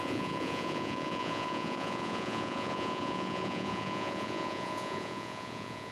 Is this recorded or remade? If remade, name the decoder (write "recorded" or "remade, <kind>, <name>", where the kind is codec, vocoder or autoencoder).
remade, vocoder, Vocos